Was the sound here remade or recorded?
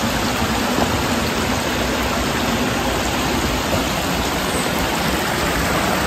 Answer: recorded